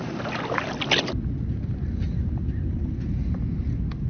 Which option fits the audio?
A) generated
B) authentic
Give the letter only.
B